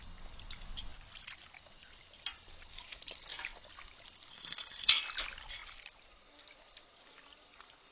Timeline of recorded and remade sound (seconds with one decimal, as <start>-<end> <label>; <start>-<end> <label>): 0.0-4.3 recorded; 4.3-5.0 remade; 5.0-7.9 recorded